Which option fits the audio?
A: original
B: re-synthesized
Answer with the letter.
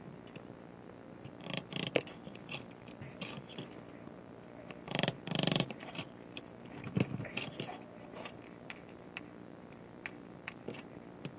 B